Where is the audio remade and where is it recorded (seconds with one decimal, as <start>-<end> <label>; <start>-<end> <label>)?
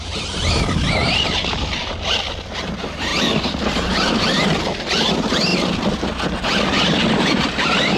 0.0-3.1 recorded; 3.1-4.6 remade; 4.6-8.0 recorded